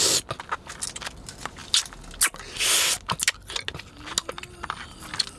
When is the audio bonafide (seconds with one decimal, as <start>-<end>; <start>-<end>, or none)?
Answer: 0.0-5.4